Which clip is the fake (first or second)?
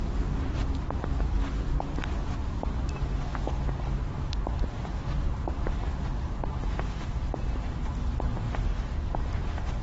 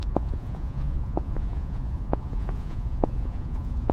second